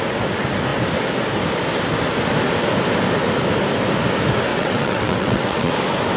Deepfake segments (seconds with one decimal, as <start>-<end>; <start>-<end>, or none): 4.5-5.7